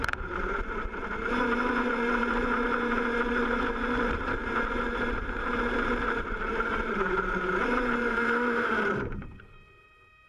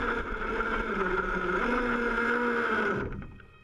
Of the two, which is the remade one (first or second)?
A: first